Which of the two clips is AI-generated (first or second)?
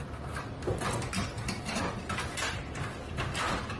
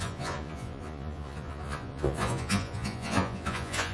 second